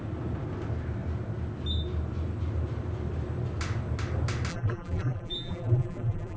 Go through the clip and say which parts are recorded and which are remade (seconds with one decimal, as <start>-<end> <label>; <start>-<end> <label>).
0.0-4.5 recorded; 4.5-6.4 remade